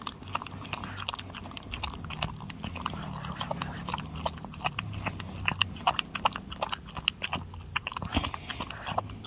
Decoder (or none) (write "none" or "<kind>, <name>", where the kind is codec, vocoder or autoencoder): none